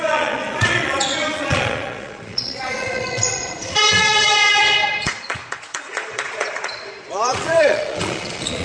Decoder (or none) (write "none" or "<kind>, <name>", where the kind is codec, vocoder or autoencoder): vocoder, Vocos